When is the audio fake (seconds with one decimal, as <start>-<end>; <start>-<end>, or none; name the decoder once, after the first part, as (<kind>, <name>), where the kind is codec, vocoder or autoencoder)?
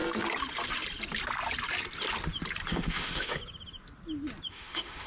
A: 2.7-3.4 (autoencoder, DAC-VAE); 4.5-5.1